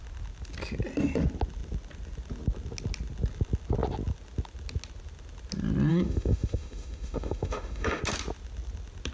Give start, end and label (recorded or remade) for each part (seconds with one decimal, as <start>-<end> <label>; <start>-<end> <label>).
0.0-5.9 recorded; 5.9-8.0 remade; 8.0-9.1 recorded